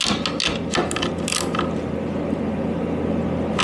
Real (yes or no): yes